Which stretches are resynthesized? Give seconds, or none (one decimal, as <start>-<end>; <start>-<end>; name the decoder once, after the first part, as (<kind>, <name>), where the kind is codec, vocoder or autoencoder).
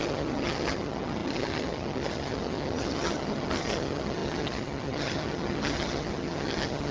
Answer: 0.0-6.9 (vocoder, HiFi-GAN)